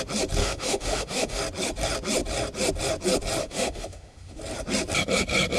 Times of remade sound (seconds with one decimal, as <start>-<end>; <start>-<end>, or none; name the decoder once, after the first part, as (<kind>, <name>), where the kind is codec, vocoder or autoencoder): 0.4-1.4 (autoencoder, DAC-VAE); 3.4-4.4